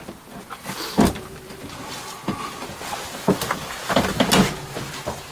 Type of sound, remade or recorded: recorded